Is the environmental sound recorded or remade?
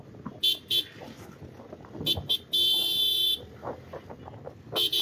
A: recorded